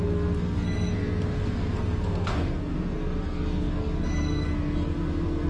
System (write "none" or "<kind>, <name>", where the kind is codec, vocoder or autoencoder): codec, SNAC